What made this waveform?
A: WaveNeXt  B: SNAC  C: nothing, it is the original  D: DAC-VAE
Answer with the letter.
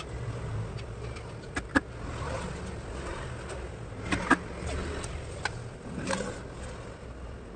C